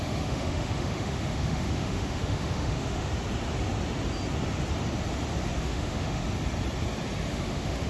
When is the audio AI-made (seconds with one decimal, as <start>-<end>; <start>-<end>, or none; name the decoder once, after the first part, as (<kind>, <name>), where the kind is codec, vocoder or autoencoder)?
0.0-3.1 (autoencoder, DAC-VAE); 5.6-6.2; 7.3-7.9